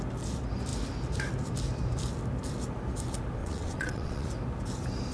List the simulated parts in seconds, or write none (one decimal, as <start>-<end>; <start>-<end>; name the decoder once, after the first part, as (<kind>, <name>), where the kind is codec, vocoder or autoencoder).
3.4-4.3 (vocoder, WaveNeXt)

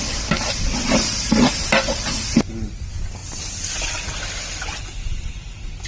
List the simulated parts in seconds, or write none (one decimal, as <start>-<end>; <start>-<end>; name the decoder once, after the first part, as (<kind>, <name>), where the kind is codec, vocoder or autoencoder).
none

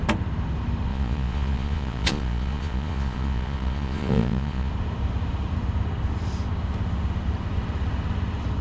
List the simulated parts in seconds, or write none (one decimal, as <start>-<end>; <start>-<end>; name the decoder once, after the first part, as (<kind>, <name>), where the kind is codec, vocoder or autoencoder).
0.9-4.7 (vocoder, Vocos)

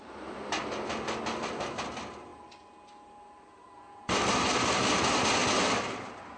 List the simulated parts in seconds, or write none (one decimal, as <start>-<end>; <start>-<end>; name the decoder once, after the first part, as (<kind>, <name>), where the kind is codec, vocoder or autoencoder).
none

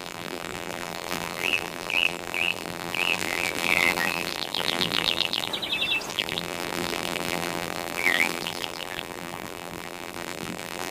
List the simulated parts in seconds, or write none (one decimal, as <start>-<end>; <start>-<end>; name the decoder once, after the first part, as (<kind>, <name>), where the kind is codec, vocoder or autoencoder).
0.0-5.5 (vocoder, BigVGAN v2); 6.1-10.9

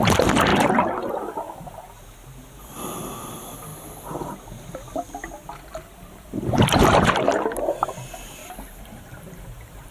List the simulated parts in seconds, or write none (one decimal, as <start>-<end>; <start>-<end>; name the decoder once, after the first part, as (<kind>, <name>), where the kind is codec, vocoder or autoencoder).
8.4-9.9 (vocoder, BigVGAN v2)